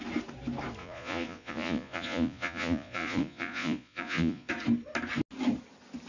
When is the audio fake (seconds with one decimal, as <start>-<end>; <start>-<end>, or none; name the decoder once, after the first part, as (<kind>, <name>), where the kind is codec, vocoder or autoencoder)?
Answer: 0.8-4.5 (vocoder, Vocos)